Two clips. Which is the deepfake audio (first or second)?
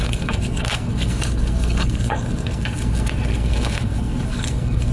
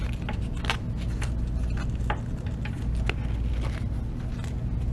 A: first